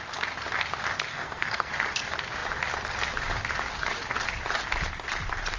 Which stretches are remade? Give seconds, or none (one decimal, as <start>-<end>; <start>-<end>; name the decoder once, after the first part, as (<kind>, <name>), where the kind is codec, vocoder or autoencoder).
1.1-1.7 (codec, SNAC)